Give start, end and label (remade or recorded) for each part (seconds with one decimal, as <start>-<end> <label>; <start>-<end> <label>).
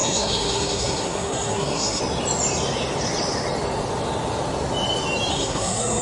0.0-2.0 remade; 2.0-5.3 recorded; 5.3-6.0 remade